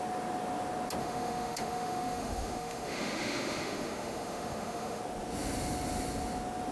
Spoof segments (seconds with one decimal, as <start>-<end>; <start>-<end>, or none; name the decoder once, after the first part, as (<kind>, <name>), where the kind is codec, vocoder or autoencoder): 1.0-5.0 (autoencoder, DAC-VAE)